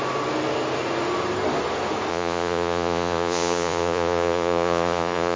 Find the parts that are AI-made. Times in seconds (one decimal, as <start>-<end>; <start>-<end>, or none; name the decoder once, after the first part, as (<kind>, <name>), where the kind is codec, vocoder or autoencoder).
2.1-5.4 (vocoder, Vocos)